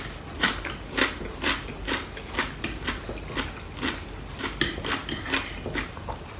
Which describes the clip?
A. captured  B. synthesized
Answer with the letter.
A